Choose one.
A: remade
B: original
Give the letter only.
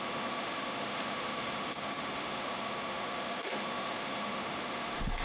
A